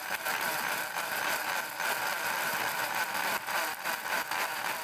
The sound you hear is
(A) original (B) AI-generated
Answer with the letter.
A